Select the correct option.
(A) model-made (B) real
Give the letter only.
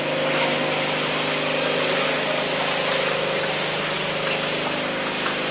B